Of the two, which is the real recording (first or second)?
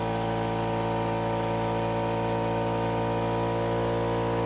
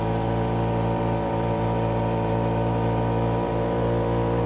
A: first